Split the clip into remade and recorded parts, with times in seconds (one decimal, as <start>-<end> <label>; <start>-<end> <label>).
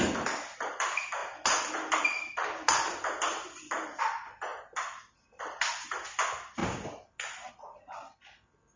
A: 0.0-8.8 recorded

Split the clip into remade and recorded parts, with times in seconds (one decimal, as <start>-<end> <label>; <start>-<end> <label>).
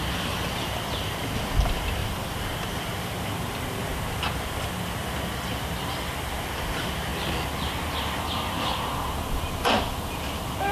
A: 0.0-2.0 recorded; 2.0-6.1 remade; 6.1-10.7 recorded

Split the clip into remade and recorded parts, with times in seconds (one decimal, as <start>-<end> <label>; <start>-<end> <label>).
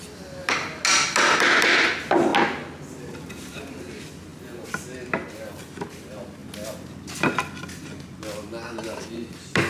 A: 0.0-9.7 recorded